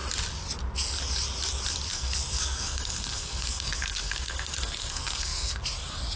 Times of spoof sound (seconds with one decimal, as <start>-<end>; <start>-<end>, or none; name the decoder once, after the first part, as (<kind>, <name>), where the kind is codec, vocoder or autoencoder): 1.9-5.6 (codec, SNAC)